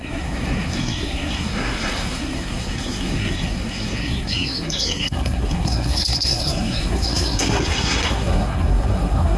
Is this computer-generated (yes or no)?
yes